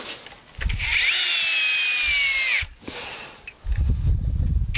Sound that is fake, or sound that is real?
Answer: real